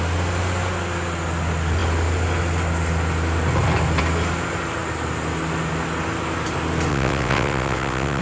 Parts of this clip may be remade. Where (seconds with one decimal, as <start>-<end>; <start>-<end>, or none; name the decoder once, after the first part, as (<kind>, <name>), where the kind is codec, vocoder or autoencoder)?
6.9-8.2 (vocoder, WaveNeXt)